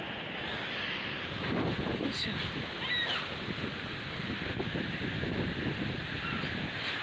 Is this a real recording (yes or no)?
yes